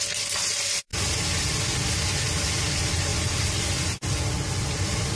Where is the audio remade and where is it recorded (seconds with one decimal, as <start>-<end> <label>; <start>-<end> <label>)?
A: 0.0-0.9 remade; 0.9-2.6 recorded; 2.6-5.2 remade